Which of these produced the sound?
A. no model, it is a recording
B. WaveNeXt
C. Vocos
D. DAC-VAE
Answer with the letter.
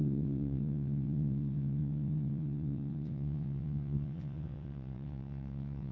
B